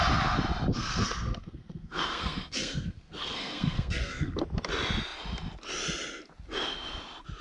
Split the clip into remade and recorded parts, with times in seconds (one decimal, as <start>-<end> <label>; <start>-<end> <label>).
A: 0.0-0.7 recorded; 0.7-4.4 remade; 4.4-7.4 recorded